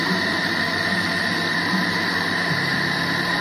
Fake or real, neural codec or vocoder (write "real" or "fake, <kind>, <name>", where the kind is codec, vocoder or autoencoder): fake, vocoder, BigVGAN v2